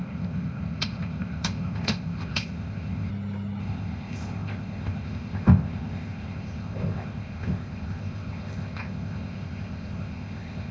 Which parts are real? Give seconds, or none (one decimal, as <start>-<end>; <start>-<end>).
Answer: 3.1-3.6